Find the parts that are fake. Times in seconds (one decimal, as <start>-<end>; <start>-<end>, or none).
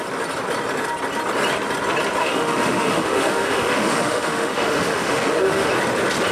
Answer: 2.2-5.7